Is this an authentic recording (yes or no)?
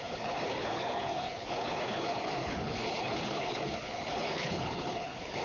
no